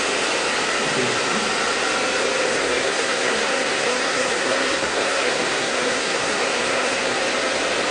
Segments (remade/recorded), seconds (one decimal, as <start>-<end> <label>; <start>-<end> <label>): 0.0-2.5 recorded; 2.5-7.2 remade; 7.2-7.9 recorded